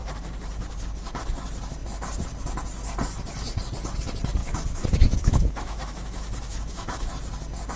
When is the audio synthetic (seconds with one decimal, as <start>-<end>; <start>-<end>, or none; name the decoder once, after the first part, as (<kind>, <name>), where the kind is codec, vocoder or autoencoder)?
4.4-7.1 (autoencoder, DAC-VAE)